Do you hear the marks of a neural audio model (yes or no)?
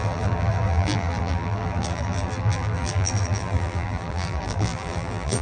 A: yes